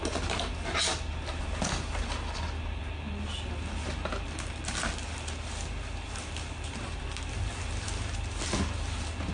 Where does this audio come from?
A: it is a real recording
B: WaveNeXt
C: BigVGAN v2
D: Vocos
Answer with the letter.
A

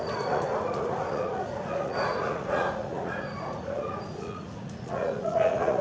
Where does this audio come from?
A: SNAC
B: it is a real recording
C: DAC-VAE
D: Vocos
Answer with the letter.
D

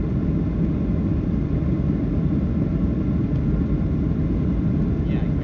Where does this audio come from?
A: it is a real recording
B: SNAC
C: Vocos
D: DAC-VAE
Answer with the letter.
A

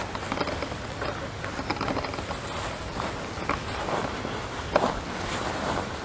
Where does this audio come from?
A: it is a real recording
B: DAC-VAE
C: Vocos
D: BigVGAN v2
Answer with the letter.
A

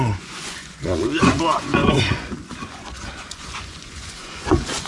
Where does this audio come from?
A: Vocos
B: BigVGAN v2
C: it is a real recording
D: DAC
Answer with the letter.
A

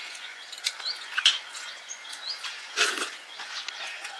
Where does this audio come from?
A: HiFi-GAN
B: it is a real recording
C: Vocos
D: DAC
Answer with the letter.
C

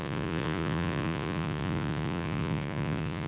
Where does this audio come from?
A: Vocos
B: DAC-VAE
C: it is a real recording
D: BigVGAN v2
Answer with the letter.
A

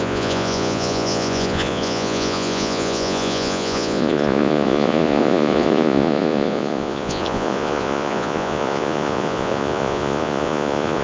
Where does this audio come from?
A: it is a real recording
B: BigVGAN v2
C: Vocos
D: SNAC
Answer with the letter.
C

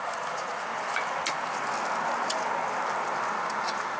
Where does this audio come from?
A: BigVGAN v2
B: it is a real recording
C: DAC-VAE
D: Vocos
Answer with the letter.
B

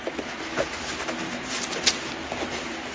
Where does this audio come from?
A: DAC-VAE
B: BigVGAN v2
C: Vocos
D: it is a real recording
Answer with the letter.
D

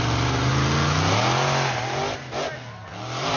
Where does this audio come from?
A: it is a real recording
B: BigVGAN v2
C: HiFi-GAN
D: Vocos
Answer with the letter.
A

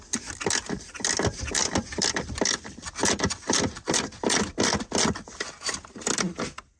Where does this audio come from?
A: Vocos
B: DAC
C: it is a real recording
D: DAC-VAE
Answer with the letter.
C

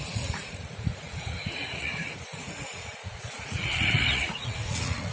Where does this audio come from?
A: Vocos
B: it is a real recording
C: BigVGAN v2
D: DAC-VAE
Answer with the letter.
A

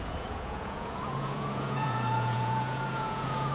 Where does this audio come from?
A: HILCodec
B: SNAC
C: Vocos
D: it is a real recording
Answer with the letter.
C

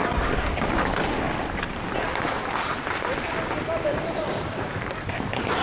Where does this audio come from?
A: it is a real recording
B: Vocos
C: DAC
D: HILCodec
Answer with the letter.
A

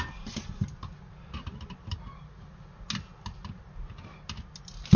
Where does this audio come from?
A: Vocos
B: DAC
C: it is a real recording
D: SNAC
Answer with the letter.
C